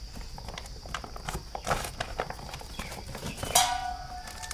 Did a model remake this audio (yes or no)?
no